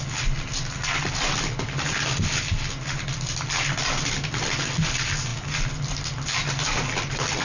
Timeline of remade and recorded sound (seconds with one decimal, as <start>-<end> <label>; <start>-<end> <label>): 0.0-7.4 recorded